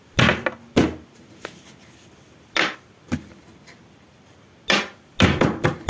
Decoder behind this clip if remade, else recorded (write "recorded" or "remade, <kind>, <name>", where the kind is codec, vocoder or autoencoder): recorded